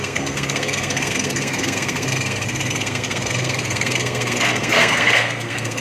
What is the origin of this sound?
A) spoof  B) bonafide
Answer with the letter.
A